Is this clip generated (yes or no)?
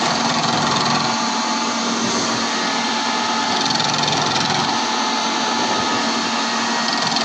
no